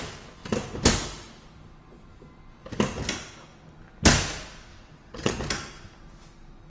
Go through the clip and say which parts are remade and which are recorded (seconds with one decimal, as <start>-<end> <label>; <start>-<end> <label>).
0.0-4.7 recorded; 4.7-5.3 remade; 5.3-6.7 recorded